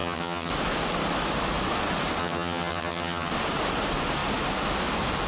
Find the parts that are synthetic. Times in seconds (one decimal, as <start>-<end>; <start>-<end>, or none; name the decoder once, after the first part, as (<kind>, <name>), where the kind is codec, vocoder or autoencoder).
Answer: 0.0-0.5 (vocoder, HiFi-GAN); 2.2-3.3

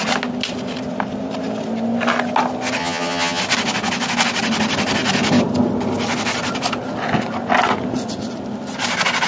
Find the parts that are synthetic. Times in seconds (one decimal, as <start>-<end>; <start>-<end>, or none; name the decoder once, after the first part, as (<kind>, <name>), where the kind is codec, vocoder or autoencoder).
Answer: 2.8-3.4 (vocoder, HiFi-GAN)

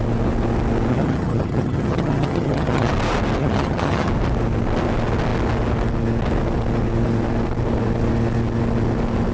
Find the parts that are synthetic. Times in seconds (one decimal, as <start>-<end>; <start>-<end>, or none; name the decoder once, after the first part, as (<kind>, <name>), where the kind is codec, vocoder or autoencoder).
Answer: 0.9-2.9 (vocoder, HiFi-GAN); 3.4-4.1